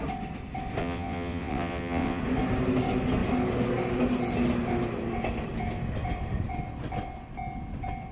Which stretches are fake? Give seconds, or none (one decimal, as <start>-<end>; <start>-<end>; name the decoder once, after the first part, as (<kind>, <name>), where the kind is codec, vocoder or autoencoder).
0.8-2.2 (vocoder, WaveNeXt)